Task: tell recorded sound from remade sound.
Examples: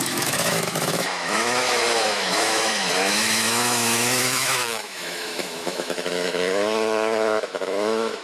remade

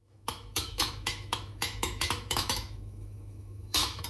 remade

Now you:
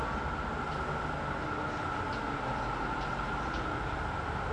recorded